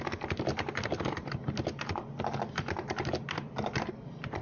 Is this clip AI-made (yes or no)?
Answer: yes